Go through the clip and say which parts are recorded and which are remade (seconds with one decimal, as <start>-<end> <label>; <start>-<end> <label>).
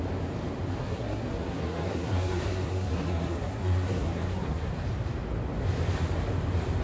0.0-0.8 recorded; 0.8-4.7 remade; 4.7-6.8 recorded